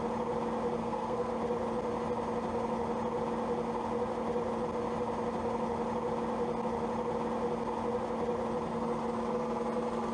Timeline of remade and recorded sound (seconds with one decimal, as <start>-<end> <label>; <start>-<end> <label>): 0.0-0.8 recorded; 0.8-1.3 remade; 1.3-10.1 recorded